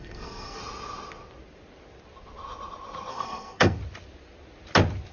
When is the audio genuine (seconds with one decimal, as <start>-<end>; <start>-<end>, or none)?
0.6-3.1; 3.8-5.1